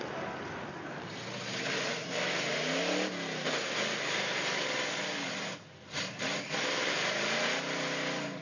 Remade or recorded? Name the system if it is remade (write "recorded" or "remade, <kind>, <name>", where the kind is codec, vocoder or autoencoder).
recorded